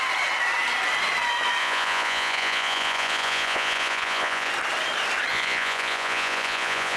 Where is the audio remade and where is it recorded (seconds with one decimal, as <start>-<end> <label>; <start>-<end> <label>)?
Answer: 0.0-1.6 recorded; 1.6-4.5 remade; 4.5-5.3 recorded; 5.3-7.0 remade